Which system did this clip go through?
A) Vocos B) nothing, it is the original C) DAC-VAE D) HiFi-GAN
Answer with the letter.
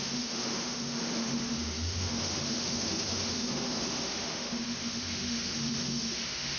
C